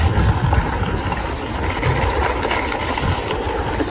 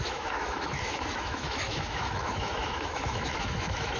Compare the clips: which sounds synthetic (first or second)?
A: second